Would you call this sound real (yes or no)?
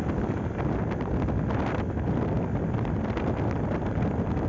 yes